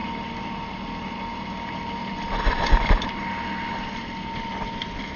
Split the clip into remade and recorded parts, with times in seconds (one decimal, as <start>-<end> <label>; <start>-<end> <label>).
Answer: 0.0-5.2 recorded